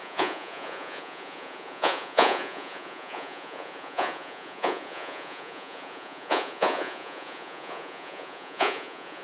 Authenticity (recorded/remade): remade